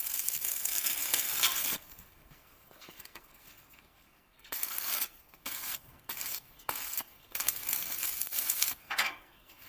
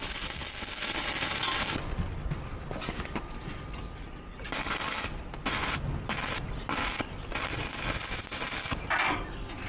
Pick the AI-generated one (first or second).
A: first